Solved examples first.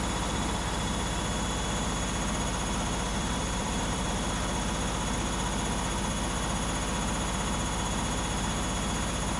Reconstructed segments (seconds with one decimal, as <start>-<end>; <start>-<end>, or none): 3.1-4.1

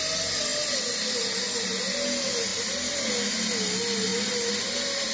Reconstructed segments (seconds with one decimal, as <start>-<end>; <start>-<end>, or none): none

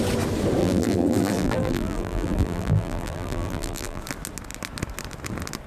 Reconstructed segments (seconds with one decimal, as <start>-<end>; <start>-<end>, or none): 0.6-4.0

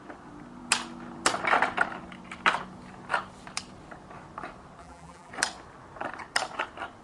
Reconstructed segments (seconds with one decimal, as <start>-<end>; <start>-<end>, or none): 4.8-5.3

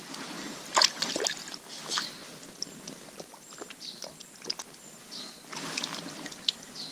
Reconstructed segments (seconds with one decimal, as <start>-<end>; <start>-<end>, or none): 0.0-0.8